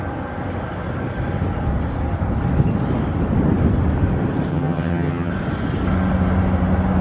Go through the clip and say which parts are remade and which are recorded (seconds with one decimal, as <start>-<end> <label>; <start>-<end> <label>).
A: 0.0-4.5 recorded; 4.5-5.3 remade; 5.3-7.0 recorded